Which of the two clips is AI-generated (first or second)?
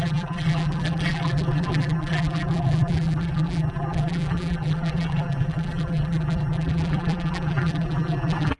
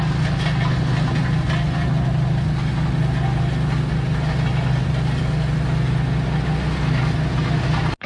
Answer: first